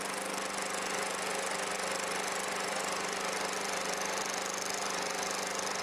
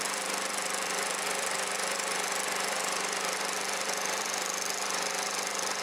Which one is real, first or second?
first